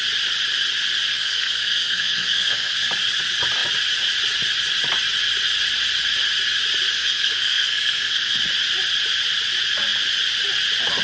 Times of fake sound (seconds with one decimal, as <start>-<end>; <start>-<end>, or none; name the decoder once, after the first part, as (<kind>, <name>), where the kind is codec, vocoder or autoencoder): 1.1-2.9 (codec, SNAC); 7.0-8.4

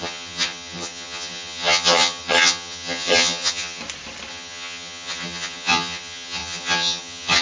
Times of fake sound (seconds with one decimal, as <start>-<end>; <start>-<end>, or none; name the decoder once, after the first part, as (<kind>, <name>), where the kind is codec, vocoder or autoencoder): 0.0-3.8 (vocoder, HiFi-GAN); 4.3-7.4

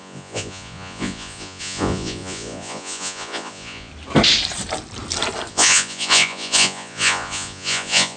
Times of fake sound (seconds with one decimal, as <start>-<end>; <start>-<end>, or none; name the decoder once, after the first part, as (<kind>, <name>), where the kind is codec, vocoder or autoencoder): 0.0-3.9 (vocoder, Vocos); 5.5-8.2

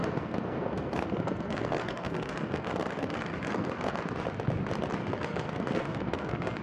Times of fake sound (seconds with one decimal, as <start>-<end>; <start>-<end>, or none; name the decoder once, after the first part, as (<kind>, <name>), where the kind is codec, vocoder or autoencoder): 0.0-4.0 (codec, SNAC); 5.0-6.6

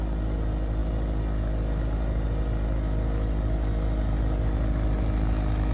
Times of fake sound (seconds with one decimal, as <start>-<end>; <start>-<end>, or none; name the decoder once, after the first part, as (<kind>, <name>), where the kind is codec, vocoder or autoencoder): none

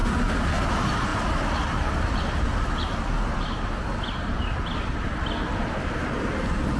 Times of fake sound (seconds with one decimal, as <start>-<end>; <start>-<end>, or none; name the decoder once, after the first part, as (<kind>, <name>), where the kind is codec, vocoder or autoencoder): none